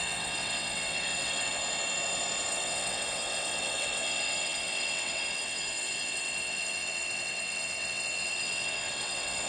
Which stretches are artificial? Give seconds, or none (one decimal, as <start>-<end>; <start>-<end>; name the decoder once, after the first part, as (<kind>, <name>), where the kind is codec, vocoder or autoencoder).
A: 0.0-1.6 (vocoder, WaveNeXt); 2.5-9.5

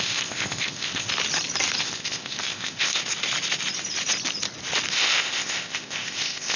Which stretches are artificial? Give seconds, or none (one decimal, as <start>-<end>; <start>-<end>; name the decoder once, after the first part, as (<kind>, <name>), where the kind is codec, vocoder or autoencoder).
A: 0.0-1.1 (codec, ZipCodec); 1.8-3.0; 4.9-6.6

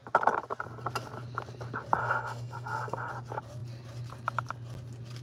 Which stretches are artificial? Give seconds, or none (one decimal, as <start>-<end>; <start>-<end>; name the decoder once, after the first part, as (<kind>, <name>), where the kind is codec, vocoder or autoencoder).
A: 2.0-3.1 (codec, SNAC)

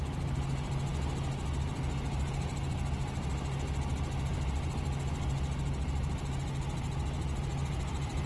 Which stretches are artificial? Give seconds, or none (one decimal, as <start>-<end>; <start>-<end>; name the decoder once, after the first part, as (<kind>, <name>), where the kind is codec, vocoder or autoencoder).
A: none

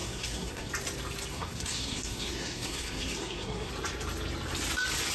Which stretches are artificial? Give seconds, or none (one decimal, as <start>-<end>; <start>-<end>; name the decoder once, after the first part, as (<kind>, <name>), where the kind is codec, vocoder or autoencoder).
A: 0.0-0.7 (codec, SNAC); 1.3-3.7

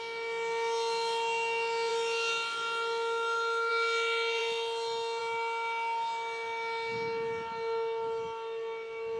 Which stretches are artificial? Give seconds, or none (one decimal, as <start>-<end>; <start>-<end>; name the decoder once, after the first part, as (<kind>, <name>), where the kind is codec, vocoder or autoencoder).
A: none

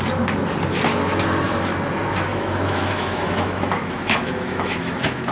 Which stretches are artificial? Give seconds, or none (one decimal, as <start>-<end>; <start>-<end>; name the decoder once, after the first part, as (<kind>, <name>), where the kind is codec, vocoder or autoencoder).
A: 2.3-5.3 (autoencoder, DAC-VAE)

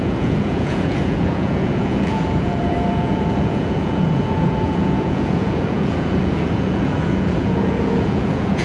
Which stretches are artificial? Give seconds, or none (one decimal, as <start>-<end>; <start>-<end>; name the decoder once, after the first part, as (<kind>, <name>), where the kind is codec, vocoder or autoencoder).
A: 0.0-8.6 (vocoder, Vocos)